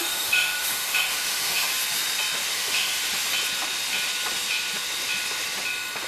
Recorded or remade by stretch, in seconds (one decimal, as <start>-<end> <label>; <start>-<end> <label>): 0.0-1.7 remade; 1.7-2.5 recorded; 2.5-3.0 remade; 3.0-6.1 recorded